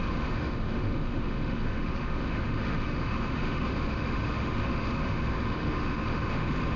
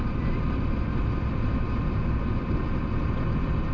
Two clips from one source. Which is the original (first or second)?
second